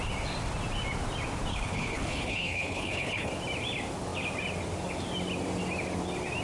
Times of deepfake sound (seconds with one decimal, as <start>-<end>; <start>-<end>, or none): 1.5-3.3